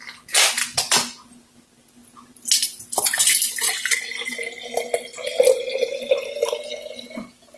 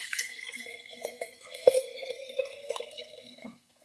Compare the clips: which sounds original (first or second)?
first